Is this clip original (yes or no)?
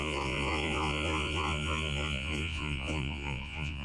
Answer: no